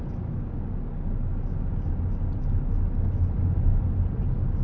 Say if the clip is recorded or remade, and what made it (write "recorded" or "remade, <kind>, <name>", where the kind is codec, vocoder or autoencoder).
recorded